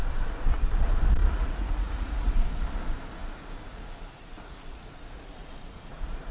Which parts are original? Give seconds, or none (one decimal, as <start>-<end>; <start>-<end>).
0.0-1.2; 2.3-3.2